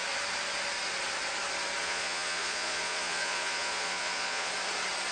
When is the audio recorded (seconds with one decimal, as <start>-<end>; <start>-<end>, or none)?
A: 0.0-1.8; 4.5-5.1